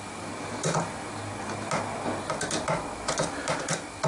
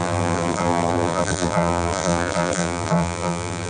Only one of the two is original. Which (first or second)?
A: first